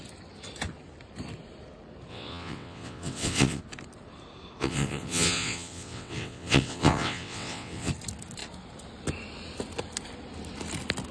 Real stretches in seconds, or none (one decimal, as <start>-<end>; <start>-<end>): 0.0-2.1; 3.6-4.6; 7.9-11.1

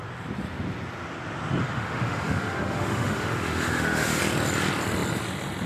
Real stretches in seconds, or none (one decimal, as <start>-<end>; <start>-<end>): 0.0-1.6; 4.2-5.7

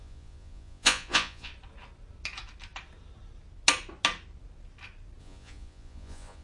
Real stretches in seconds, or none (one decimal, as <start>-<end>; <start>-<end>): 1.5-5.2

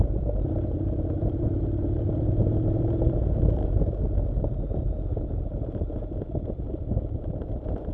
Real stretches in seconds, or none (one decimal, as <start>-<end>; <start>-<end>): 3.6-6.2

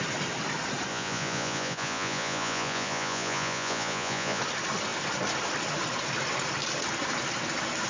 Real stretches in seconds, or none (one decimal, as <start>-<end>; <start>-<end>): 0.0-0.9; 4.4-7.9